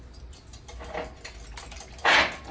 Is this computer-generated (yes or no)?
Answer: no